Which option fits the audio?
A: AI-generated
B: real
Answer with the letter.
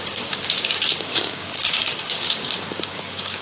A